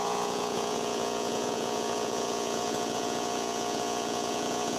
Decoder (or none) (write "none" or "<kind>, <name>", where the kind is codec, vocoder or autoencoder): vocoder, Vocos